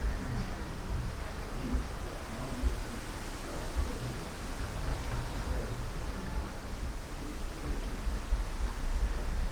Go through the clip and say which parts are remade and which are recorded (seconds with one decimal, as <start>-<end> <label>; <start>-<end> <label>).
0.0-7.0 recorded; 7.0-7.5 remade; 7.5-8.0 recorded; 8.0-9.5 remade